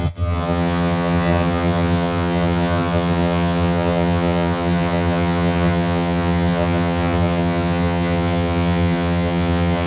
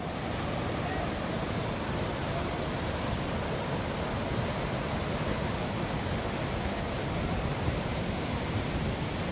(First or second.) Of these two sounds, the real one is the second